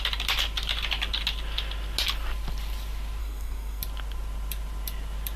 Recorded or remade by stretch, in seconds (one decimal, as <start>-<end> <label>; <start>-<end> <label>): 0.0-3.2 recorded; 3.2-3.8 remade; 3.8-5.4 recorded